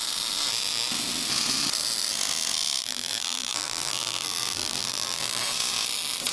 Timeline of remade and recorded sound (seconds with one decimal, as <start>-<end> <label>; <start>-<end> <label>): 0.0-2.8 recorded; 2.8-5.4 remade; 5.4-6.3 recorded